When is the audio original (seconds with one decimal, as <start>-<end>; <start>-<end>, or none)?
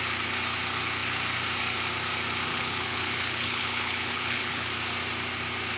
0.0-2.5; 4.7-5.8